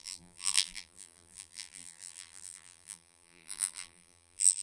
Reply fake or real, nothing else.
fake